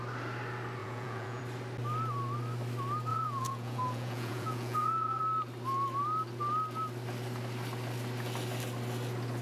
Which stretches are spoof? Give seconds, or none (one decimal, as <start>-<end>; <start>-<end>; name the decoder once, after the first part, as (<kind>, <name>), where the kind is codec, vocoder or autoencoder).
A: 0.8-1.4 (vocoder, Vocos); 3.1-5.2